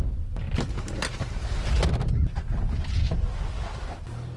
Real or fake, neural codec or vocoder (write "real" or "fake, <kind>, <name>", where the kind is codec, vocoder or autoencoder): real